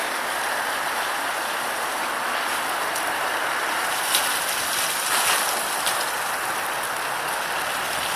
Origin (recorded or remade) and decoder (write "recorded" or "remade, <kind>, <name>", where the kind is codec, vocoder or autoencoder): recorded